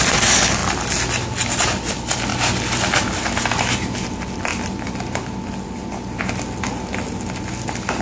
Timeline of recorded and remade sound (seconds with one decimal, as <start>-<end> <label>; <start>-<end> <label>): 0.0-8.0 recorded